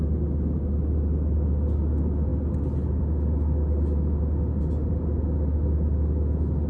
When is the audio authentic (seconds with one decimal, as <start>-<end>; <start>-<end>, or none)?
0.0-6.7